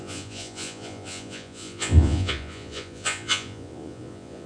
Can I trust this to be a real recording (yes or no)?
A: no